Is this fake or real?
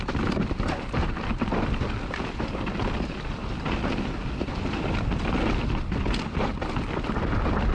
real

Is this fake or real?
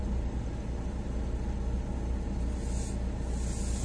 real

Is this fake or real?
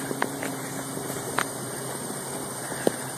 fake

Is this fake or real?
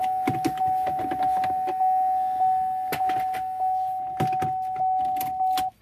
real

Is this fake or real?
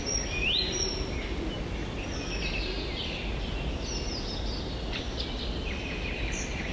real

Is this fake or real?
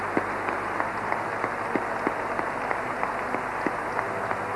real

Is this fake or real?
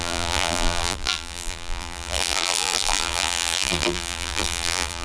fake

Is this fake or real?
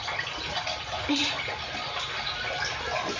real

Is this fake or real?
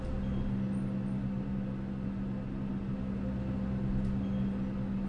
real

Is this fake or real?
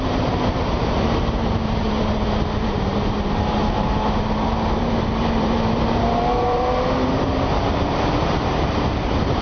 fake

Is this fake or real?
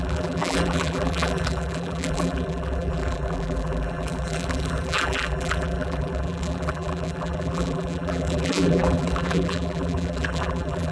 fake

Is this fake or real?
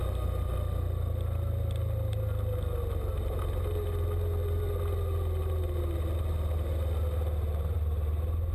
real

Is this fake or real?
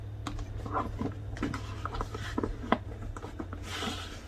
fake